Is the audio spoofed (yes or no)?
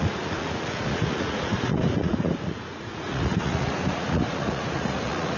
yes